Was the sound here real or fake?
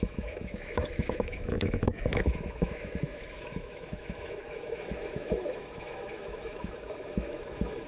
fake